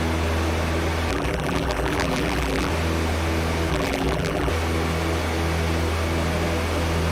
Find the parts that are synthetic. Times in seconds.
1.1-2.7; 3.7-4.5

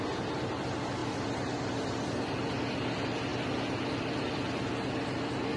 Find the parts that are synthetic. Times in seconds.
1.0-2.2; 3.3-4.3

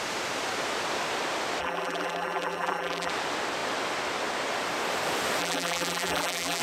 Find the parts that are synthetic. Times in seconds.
1.6-3.1; 5.4-6.6

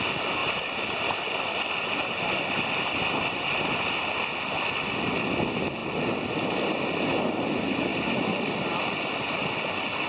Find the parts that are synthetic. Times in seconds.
0.4-2.4; 7.9-9.4